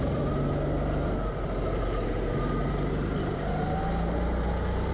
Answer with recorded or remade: recorded